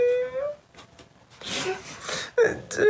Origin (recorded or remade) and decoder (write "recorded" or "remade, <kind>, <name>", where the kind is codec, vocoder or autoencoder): recorded